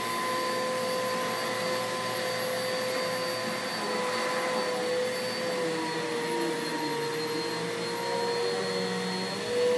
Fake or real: real